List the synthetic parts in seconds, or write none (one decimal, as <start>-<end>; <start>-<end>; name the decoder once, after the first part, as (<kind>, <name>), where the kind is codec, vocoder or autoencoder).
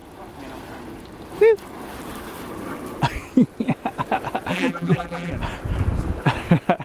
4.5-5.3 (vocoder, BigVGAN v2)